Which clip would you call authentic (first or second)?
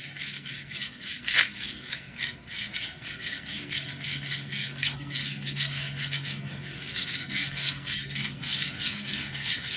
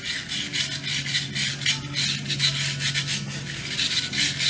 second